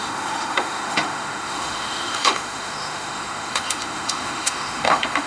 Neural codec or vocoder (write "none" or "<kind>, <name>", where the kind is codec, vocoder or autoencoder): autoencoder, DAC-VAE